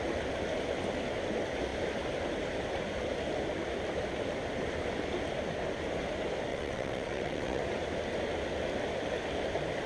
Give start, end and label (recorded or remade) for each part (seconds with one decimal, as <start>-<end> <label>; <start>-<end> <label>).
0.0-6.5 recorded; 6.5-7.6 remade; 7.6-9.9 recorded